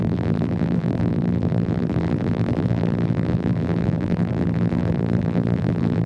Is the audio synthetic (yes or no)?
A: yes